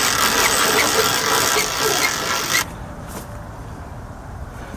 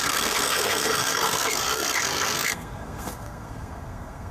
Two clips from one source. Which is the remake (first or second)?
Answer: second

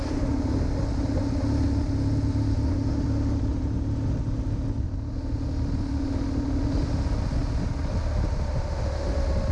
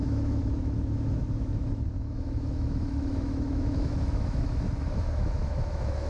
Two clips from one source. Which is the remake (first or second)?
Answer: second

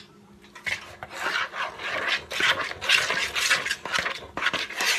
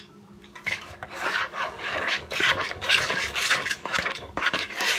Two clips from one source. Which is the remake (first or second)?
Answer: second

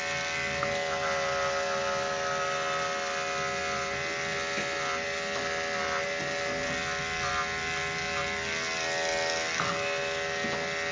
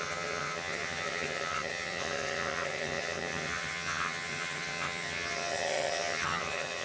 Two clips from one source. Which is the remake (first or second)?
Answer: second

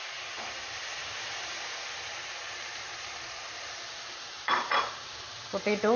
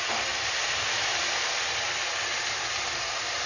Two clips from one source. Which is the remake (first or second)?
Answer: first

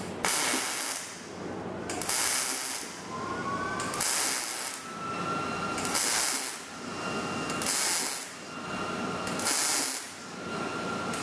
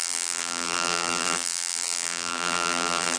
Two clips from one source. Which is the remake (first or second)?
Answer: second